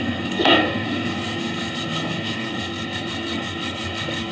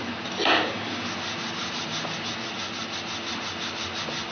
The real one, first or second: second